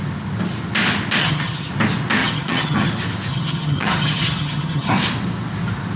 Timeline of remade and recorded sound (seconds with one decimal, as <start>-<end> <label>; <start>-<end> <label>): 0.0-1.2 recorded; 1.2-1.7 remade; 1.7-2.2 recorded; 2.2-2.9 remade; 2.9-3.3 recorded; 3.3-4.9 remade; 4.9-6.0 recorded